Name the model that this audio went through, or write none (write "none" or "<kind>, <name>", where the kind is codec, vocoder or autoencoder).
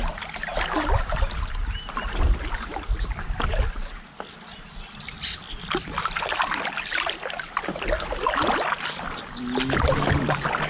none